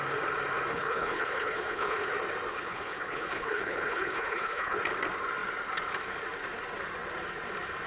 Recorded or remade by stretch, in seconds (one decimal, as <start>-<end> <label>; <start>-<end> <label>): 0.0-0.7 recorded; 0.7-2.1 remade; 2.1-2.5 recorded; 2.5-4.8 remade; 4.8-7.9 recorded